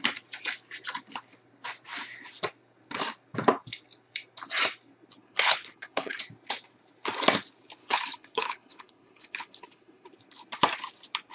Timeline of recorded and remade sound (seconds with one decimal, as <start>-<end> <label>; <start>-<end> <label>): 0.0-5.2 recorded; 5.2-6.2 remade; 6.2-7.8 recorded; 7.8-10.1 remade; 10.1-11.3 recorded